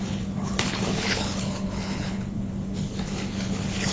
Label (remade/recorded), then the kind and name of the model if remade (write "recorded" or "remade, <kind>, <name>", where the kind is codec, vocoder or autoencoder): remade, codec, HILCodec